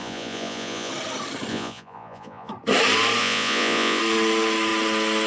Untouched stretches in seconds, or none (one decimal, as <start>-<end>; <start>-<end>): 0.9-1.5; 2.5-3.2; 4.0-5.3